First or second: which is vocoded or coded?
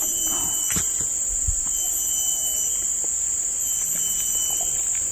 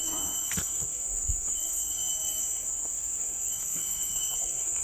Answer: second